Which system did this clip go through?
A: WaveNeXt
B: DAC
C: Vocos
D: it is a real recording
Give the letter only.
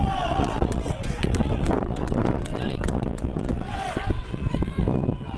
A